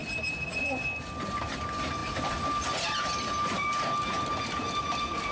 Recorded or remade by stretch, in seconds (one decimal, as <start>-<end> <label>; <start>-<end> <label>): 0.0-5.3 recorded

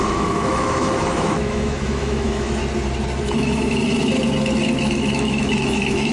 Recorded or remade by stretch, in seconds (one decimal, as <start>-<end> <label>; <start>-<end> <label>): 0.0-2.6 remade; 2.6-3.2 recorded; 3.2-3.8 remade; 3.8-4.8 recorded; 4.8-6.1 remade

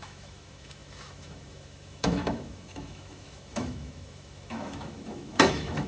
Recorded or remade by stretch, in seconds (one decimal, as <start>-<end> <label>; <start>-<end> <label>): 0.0-5.9 remade

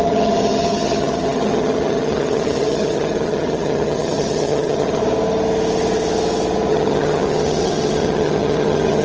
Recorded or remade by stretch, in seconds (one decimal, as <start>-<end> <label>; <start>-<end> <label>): 0.0-5.0 remade; 5.0-6.7 recorded; 6.7-9.0 remade

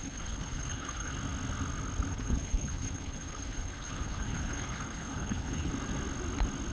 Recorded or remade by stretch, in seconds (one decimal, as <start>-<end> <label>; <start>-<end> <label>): 0.0-1.1 remade; 1.1-2.1 recorded; 2.1-5.7 remade; 5.7-6.7 recorded

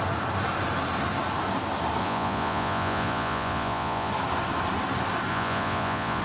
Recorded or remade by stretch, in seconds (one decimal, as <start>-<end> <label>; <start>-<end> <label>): 0.0-2.0 recorded; 2.0-4.1 remade; 4.1-5.3 recorded; 5.3-6.2 remade